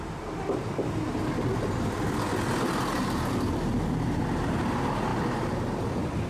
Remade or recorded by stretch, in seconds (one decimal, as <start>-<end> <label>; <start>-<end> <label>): 0.0-6.3 recorded